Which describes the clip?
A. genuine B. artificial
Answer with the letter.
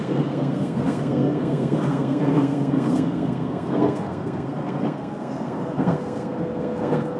B